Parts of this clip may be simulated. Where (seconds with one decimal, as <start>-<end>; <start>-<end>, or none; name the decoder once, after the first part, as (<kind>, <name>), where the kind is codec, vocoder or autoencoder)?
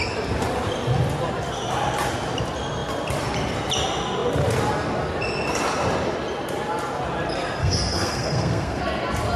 7.6-8.8 (codec, SNAC)